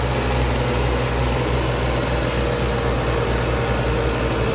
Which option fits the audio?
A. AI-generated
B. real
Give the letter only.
B